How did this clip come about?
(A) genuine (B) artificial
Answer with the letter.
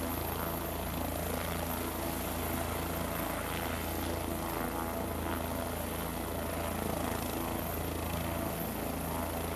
A